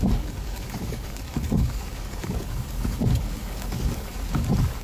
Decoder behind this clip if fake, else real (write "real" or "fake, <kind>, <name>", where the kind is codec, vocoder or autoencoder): fake, codec, DAC